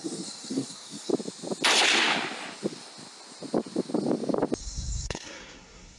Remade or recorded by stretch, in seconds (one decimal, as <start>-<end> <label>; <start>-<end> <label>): 0.0-1.1 remade; 1.1-4.6 recorded; 4.6-6.0 remade